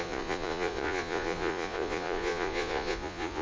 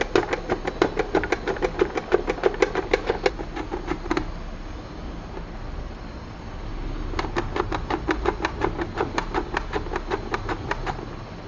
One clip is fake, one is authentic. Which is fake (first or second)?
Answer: first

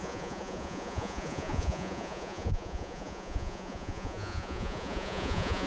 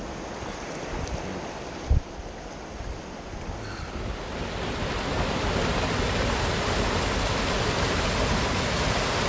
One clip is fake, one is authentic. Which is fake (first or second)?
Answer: first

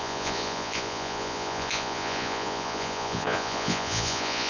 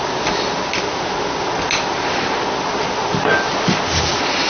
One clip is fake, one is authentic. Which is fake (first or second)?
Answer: first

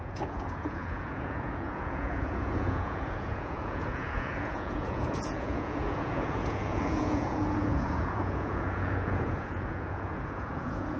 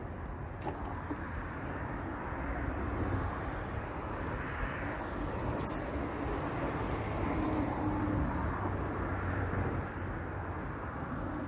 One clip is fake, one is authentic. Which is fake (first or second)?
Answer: first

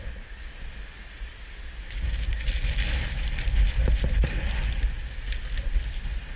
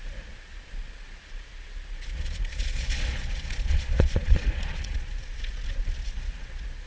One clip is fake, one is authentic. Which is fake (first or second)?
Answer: second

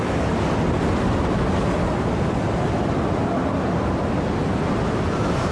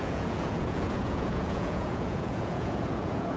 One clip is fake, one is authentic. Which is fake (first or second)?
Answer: second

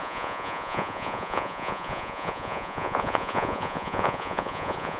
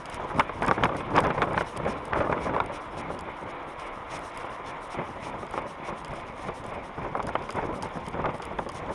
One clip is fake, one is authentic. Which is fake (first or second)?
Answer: first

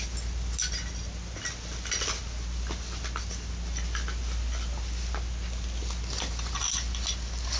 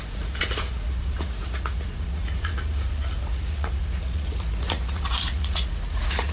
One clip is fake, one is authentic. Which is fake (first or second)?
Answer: second